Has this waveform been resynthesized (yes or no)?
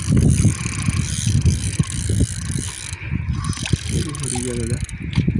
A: no